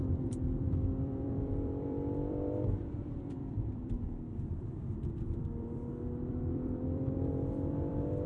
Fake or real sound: fake